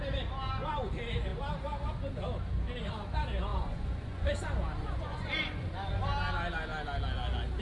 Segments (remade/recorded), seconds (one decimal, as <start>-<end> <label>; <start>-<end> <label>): 0.0-3.5 recorded; 3.5-4.3 remade; 4.3-4.8 recorded; 4.8-5.7 remade; 5.7-7.6 recorded

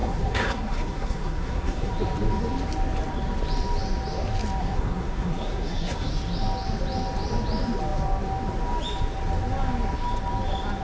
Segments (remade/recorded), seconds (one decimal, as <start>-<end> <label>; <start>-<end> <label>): 0.0-1.9 remade; 1.9-4.6 recorded; 4.6-6.1 remade; 6.1-10.8 recorded

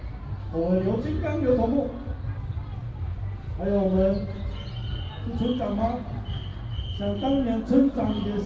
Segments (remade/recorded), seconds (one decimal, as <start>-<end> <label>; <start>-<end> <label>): 0.0-8.5 recorded

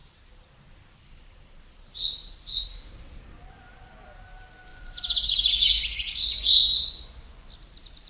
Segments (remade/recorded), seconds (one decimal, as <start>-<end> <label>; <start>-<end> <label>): 0.0-4.7 recorded; 4.7-7.5 remade; 7.5-8.1 recorded

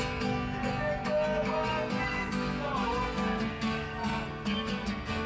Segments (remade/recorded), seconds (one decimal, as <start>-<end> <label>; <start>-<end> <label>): 0.0-1.7 recorded; 1.7-5.3 remade